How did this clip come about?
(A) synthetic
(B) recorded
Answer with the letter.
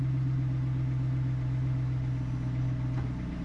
B